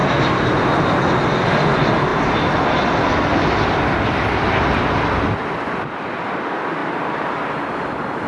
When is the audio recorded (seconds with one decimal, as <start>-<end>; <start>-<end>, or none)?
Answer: 1.1-6.8; 7.4-8.3